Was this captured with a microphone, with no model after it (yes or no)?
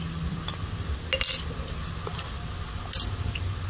yes